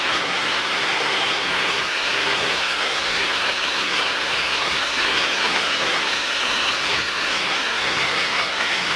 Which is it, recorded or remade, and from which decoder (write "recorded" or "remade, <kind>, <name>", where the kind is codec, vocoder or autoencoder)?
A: remade, codec, SNAC